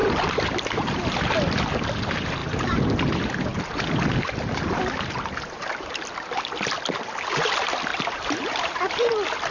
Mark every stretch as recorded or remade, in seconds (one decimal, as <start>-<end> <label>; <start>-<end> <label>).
0.0-1.3 remade; 1.3-2.4 recorded; 2.4-3.1 remade; 3.1-7.9 recorded; 7.9-9.1 remade; 9.1-9.5 recorded